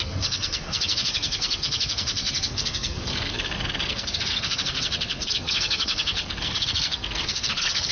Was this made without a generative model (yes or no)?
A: no